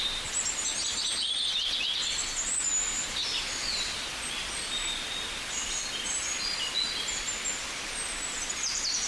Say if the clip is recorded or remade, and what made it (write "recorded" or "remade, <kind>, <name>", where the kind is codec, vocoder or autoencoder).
recorded